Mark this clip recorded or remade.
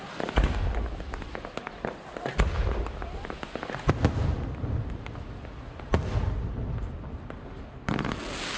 recorded